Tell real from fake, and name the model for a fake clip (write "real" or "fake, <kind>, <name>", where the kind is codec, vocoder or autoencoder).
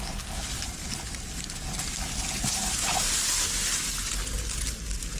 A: real